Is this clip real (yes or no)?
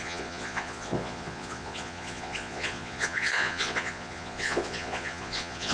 no